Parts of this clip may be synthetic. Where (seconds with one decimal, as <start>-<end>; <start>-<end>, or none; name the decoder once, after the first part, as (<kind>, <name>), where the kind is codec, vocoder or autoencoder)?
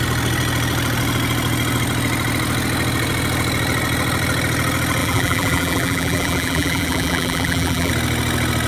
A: 5.0-7.9 (vocoder, BigVGAN v2)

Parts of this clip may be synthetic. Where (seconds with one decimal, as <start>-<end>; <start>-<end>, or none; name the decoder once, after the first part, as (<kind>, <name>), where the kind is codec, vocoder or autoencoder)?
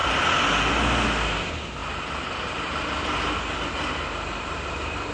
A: none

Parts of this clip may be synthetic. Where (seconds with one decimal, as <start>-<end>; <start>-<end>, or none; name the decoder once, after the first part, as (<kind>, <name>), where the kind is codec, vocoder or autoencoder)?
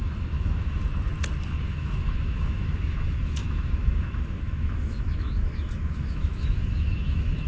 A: 0.0-0.8 (autoencoder, DAC-VAE); 1.5-7.5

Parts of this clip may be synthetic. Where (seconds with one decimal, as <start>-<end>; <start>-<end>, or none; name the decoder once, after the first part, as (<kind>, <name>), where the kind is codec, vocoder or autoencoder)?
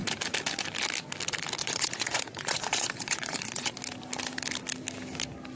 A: 1.6-3.8 (vocoder, Vocos)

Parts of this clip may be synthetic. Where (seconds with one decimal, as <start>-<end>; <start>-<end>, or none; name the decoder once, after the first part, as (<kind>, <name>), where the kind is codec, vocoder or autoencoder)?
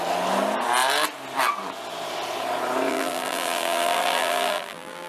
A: 2.9-5.1 (vocoder, BigVGAN v2)